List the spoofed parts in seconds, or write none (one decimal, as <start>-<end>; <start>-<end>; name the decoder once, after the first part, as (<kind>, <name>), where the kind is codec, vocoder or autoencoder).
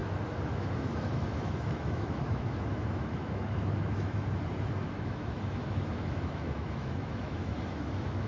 0.0-4.2 (autoencoder, DAC-VAE); 4.9-8.3